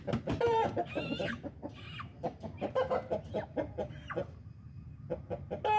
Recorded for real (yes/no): yes